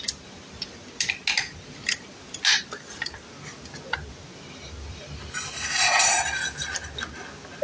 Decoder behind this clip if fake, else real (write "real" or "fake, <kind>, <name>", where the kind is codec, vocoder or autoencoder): real